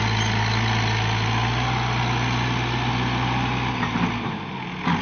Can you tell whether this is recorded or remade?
recorded